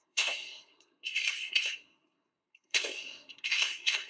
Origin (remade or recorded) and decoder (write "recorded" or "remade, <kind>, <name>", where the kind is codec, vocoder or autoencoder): remade, codec, SNAC